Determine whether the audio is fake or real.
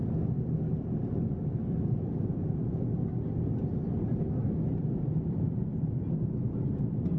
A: real